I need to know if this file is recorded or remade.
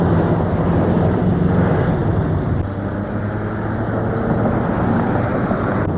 recorded